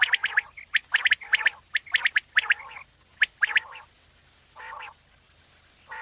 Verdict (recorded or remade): recorded